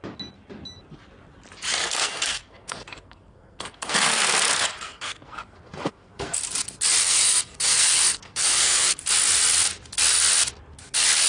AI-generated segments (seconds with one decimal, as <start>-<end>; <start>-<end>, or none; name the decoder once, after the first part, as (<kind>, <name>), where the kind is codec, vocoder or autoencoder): 1.8-6.4 (codec, SNAC); 7.0-9.0